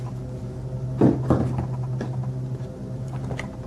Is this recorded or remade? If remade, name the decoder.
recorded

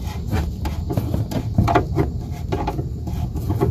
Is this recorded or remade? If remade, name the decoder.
recorded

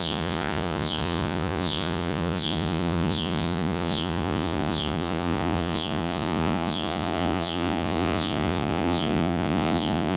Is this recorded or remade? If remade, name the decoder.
remade, vocoder, Vocos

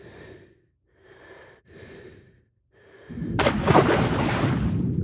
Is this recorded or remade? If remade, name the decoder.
remade, vocoder, BigVGAN v2